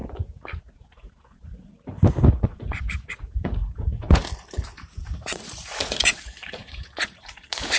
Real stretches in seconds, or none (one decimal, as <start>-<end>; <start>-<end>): 0.0-0.6; 1.7-2.3; 4.2-4.9